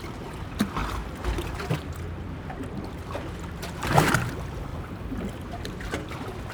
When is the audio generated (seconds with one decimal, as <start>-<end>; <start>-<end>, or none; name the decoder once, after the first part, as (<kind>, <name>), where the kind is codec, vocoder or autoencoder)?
0.0-0.8 (vocoder, BigVGAN v2); 3.8-4.7; 5.6-6.5